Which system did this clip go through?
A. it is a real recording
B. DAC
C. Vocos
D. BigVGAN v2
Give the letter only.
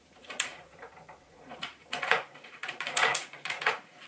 C